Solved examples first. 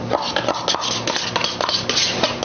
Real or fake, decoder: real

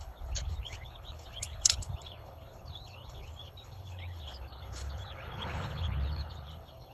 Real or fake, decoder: fake, codec, HILCodec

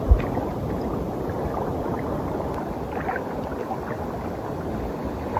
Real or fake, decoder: real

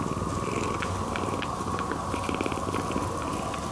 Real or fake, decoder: real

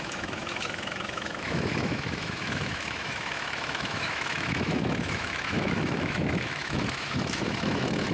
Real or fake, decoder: fake, autoencoder, DAC-VAE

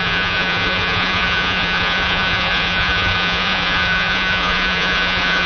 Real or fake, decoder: fake, vocoder, Vocos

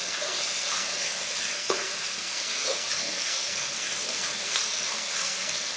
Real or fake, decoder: fake, codec, SNAC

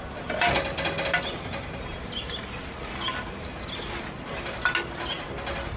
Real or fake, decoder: real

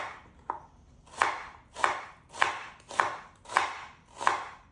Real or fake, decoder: real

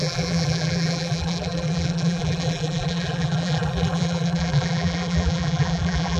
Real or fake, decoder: fake, vocoder, BigVGAN v2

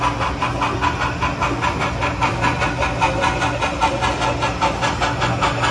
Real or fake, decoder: real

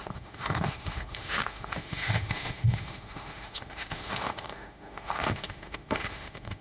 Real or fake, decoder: fake, autoencoder, DAC-VAE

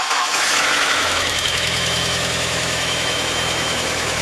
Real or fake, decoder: fake, autoencoder, DAC-VAE